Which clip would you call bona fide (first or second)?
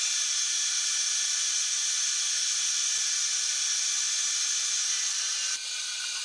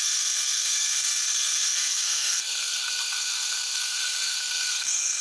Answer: first